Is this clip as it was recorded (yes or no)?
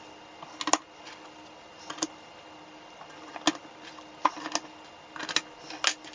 yes